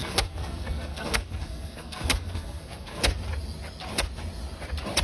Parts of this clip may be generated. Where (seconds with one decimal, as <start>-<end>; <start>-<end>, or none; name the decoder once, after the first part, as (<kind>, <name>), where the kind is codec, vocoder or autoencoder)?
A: 0.0-3.0 (codec, SNAC)